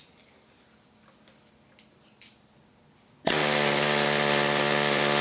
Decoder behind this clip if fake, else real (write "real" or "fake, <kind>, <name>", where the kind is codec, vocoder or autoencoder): real